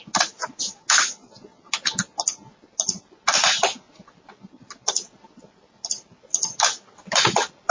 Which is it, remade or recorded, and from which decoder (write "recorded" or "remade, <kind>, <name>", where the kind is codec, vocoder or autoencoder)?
recorded